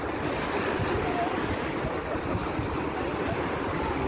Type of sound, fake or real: real